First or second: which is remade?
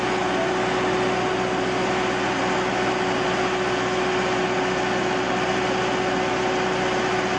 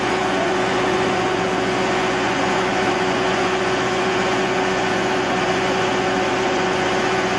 second